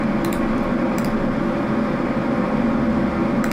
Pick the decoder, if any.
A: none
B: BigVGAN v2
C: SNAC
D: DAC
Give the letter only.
A